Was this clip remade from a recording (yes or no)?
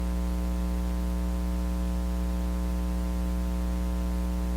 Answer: no